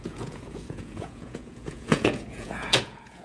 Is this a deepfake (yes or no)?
yes